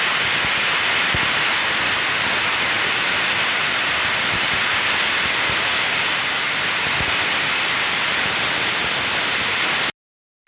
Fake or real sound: real